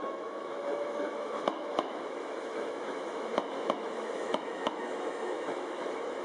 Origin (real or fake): fake